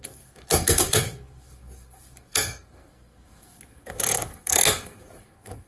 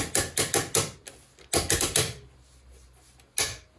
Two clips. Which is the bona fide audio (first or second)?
second